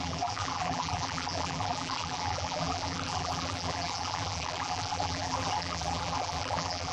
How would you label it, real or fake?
fake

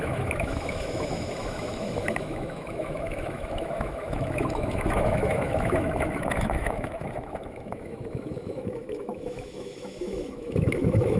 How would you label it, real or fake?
fake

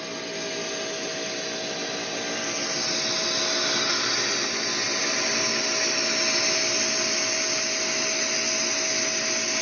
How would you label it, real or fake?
real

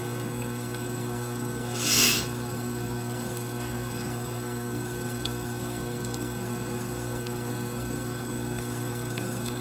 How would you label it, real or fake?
fake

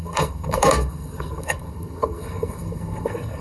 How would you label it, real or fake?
fake